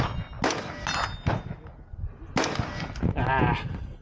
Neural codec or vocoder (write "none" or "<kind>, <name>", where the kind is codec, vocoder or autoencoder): none